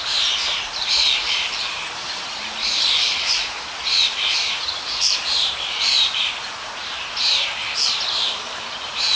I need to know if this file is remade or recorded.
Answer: remade